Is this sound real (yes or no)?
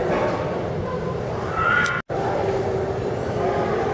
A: yes